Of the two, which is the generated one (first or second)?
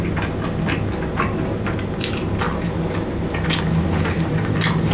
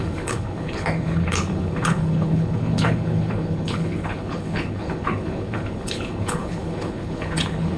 second